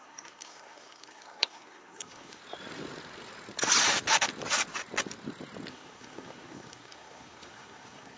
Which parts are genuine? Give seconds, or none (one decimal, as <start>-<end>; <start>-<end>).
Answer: 2.4-5.7